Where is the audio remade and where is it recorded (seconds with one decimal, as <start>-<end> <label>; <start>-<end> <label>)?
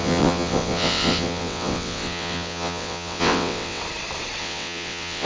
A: 0.0-3.8 remade; 3.8-4.4 recorded; 4.4-5.3 remade